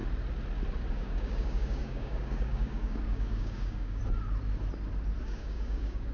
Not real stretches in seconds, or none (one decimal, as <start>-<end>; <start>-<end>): 0.9-4.0; 5.2-6.1